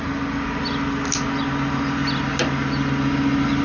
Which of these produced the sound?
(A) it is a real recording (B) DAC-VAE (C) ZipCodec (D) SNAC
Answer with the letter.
A